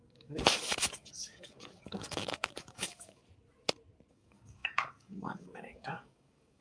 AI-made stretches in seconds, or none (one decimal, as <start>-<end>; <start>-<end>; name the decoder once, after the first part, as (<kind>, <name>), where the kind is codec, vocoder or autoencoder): 0.0-3.2 (codec, DAC); 4.1-6.6